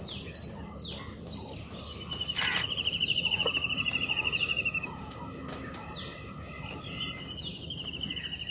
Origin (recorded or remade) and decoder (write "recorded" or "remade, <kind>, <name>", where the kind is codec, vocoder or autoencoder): recorded